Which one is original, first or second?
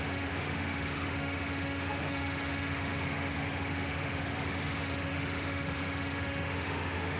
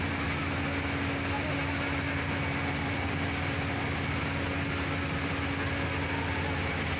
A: second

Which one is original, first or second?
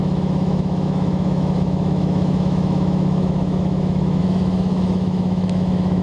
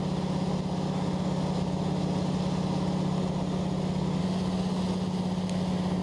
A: second